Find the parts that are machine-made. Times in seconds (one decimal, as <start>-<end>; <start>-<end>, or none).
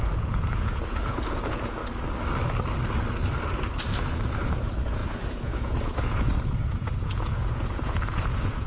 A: 0.0-1.8; 4.3-8.7